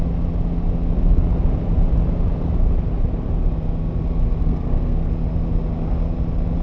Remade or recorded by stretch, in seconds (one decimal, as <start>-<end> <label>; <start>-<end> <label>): 0.0-4.4 recorded; 4.4-5.1 remade; 5.1-6.6 recorded